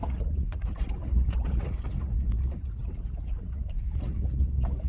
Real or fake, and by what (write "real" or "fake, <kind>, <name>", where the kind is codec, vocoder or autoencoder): fake, vocoder, Vocos